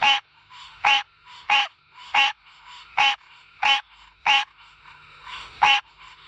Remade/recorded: remade